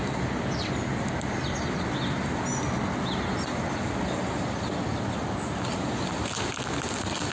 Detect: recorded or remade recorded